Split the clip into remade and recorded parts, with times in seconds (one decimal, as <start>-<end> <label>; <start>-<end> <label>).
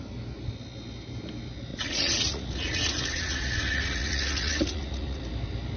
0.0-1.7 recorded; 1.7-5.2 remade; 5.2-5.8 recorded